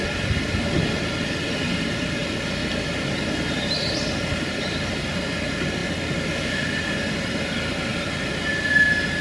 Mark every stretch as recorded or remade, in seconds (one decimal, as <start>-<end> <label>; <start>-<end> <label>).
0.0-9.2 recorded